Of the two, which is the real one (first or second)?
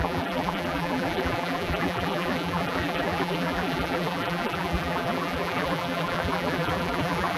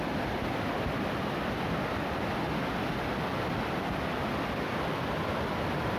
second